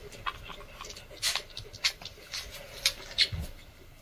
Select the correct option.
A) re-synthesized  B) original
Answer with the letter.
B